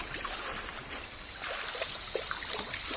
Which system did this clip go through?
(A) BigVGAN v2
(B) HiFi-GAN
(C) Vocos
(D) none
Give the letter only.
D